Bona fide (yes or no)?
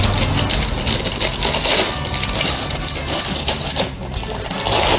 yes